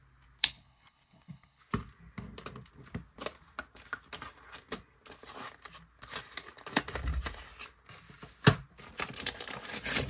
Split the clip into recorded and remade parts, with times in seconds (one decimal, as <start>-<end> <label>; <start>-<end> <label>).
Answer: 0.0-0.4 recorded; 0.4-1.6 remade; 1.6-10.1 recorded

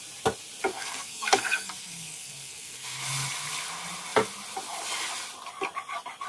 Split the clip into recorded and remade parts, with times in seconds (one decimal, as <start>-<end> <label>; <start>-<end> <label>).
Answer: 0.0-0.7 recorded; 0.7-3.0 remade; 3.0-6.3 recorded

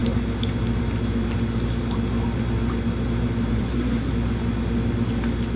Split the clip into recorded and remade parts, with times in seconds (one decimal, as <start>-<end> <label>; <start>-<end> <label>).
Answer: 0.0-3.5 recorded; 3.5-4.1 remade; 4.1-5.6 recorded

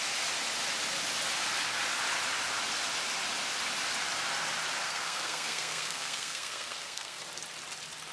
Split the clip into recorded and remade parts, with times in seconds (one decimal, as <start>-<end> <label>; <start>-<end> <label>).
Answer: 0.0-4.8 recorded; 4.8-7.2 remade; 7.2-8.1 recorded

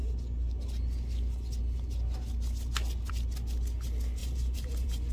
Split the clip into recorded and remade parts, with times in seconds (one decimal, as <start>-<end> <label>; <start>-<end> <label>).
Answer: 0.0-4.2 recorded; 4.2-5.1 remade

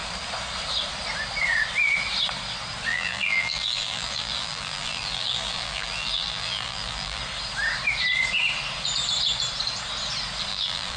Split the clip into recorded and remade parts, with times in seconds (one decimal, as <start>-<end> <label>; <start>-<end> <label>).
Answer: 0.0-2.9 recorded; 2.9-7.2 remade; 7.2-10.5 recorded; 10.5-11.0 remade

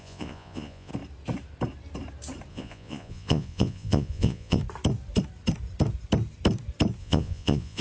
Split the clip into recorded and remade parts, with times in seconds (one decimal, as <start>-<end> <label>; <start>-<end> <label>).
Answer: 0.0-0.9 remade; 0.9-2.5 recorded; 2.5-4.6 remade; 4.6-7.0 recorded; 7.0-7.8 remade

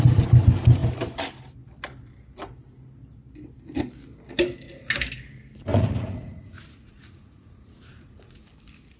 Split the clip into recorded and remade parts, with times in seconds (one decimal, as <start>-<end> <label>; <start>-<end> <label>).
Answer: 0.0-5.7 recorded; 5.7-8.4 remade; 8.4-9.0 recorded